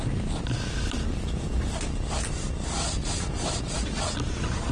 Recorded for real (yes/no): yes